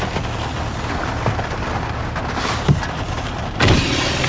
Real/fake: real